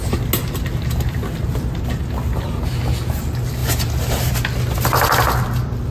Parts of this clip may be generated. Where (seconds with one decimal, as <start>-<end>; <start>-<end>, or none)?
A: 3.6-4.3